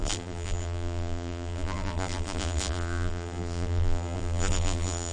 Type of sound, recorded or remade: remade